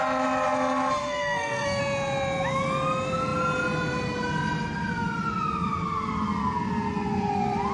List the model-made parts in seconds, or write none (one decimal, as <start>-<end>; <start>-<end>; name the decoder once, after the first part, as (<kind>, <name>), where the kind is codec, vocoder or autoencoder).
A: 1.0-1.8 (codec, SNAC)

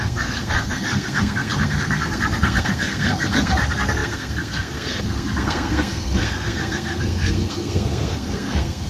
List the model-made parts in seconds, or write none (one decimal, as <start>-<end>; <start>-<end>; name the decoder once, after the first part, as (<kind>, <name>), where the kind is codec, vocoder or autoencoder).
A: 0.0-8.9 (codec, SNAC)